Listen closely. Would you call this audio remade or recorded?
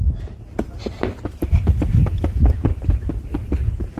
recorded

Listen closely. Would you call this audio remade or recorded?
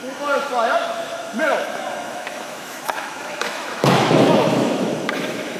remade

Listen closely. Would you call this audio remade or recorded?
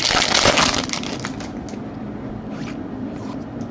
recorded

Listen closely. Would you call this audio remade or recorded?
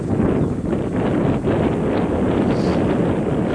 recorded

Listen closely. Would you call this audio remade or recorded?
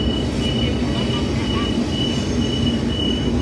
recorded